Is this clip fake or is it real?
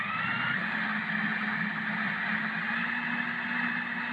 real